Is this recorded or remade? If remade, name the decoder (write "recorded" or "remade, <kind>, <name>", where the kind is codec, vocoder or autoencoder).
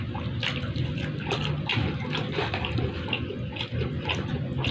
remade, vocoder, BigVGAN v2